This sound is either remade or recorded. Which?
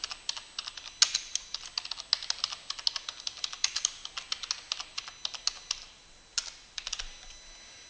recorded